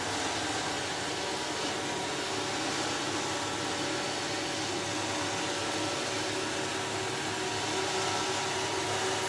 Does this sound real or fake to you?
real